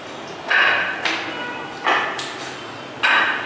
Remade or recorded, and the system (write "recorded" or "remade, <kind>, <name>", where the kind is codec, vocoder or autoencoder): recorded